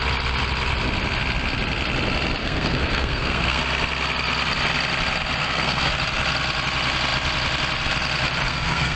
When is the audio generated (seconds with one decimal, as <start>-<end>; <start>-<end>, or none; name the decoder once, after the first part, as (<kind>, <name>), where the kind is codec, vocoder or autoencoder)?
2.4-3.6 (codec, SNAC); 5.4-5.9; 8.5-9.0